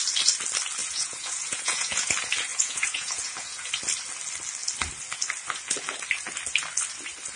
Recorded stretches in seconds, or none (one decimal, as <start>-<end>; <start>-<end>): 0.0-0.8; 2.1-2.5; 3.7-7.4